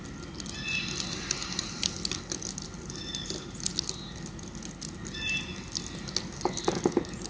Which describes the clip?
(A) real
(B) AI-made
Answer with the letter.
A